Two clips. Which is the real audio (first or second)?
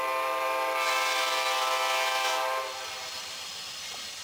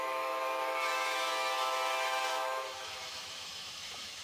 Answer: first